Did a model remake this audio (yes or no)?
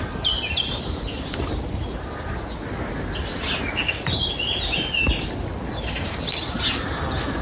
no